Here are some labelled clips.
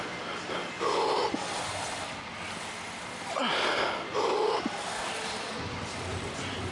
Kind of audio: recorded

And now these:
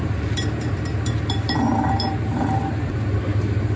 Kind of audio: remade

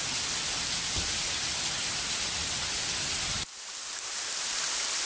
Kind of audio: recorded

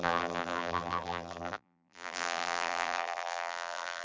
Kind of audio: remade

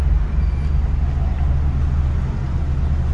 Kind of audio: recorded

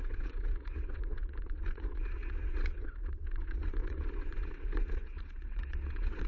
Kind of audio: remade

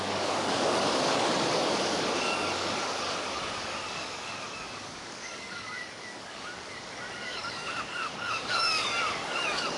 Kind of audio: remade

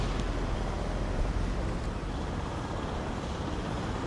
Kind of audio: recorded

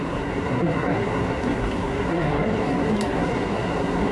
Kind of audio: remade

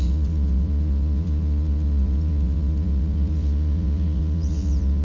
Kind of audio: remade